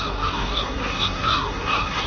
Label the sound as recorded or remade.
remade